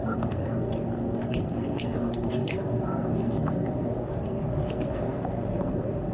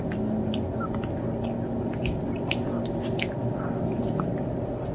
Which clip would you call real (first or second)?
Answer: second